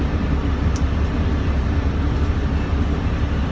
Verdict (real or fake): real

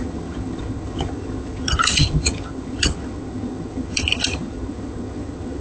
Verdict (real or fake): fake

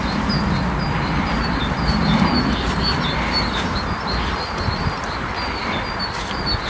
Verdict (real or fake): real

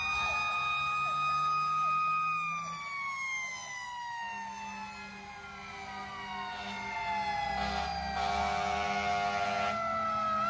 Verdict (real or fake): real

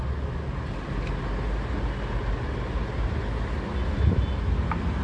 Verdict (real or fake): real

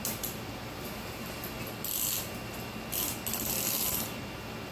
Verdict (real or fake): real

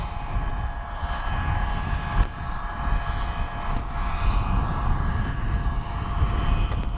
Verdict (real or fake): real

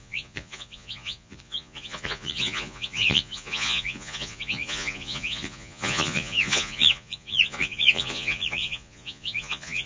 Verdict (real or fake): fake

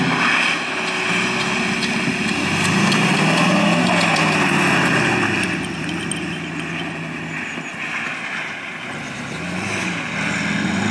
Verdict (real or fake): real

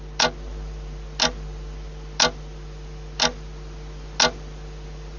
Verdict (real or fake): real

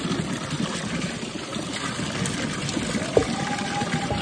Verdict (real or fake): real